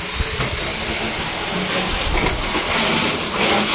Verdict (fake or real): real